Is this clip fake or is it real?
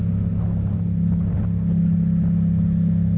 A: real